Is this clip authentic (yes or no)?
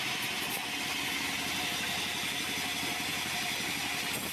yes